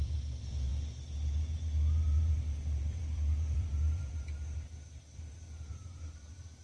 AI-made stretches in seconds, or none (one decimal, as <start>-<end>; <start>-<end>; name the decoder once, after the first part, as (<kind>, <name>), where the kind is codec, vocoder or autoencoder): 0.0-6.6 (vocoder, BigVGAN v2)